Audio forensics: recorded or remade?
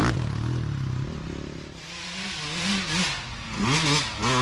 recorded